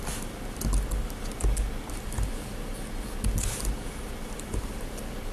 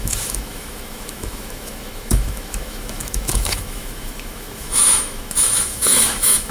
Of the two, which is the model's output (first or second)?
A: second